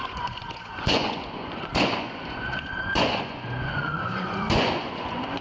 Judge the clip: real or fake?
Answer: fake